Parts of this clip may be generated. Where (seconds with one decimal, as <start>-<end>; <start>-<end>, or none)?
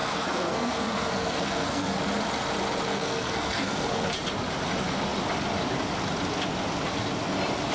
0.0-2.0; 2.9-4.1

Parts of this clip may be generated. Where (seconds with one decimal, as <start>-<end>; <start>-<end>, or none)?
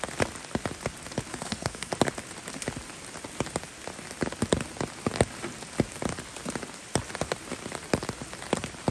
1.3-1.9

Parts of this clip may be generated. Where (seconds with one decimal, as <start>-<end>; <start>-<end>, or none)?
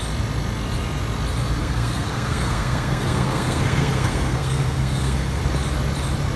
1.6-5.4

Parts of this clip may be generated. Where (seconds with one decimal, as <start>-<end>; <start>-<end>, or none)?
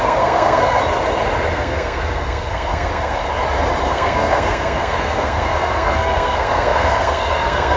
0.0-0.8; 1.5-3.2; 3.9-7.8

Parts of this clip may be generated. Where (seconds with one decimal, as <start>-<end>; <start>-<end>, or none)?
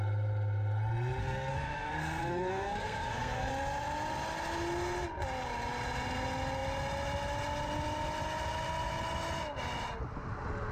1.2-3.5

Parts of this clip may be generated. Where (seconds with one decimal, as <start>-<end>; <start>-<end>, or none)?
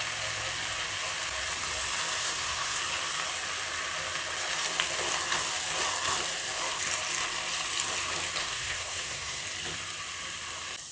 2.2-2.8; 8.4-9.4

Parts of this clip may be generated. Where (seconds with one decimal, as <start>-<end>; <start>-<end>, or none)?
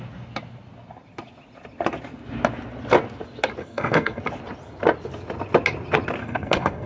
3.6-4.2; 6.2-6.9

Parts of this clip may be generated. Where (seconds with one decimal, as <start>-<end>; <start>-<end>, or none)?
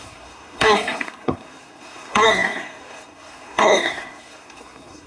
0.0-5.1